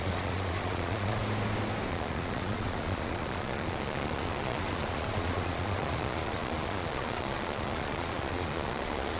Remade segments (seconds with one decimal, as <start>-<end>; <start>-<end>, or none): 0.0-1.2; 1.9-9.2